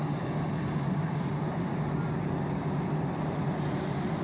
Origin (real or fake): real